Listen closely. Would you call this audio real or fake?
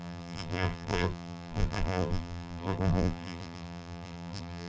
fake